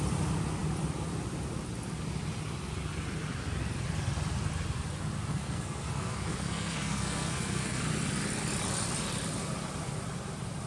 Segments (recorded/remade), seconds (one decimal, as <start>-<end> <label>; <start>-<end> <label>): 0.0-5.3 recorded; 5.3-7.8 remade; 7.8-10.7 recorded